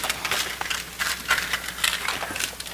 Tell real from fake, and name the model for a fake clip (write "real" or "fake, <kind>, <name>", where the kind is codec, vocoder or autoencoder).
real